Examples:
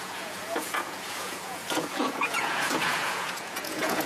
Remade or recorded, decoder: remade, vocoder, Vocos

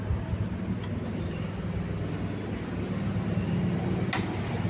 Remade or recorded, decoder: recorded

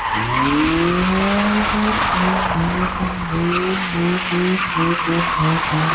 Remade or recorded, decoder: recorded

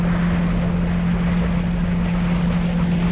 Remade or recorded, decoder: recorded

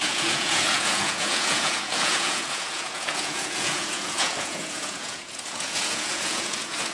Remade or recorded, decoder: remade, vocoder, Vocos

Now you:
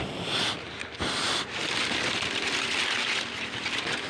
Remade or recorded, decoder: recorded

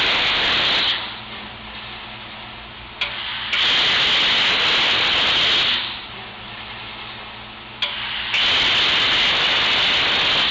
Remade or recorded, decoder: recorded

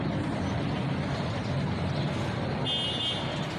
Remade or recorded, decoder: recorded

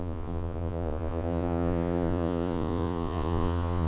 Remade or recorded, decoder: remade, vocoder, Vocos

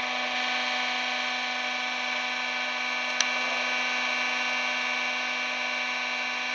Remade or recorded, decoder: recorded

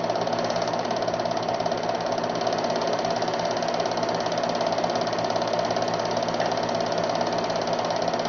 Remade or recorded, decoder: recorded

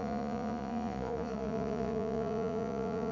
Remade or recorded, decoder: remade, vocoder, Vocos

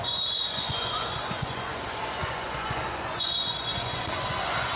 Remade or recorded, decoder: remade, vocoder, Vocos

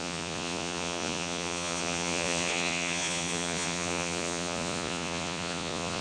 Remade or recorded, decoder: remade, vocoder, Vocos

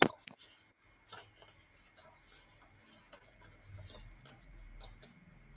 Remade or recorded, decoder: recorded